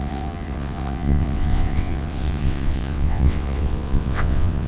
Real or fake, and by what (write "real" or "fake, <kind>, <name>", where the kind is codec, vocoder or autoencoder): fake, vocoder, WaveNeXt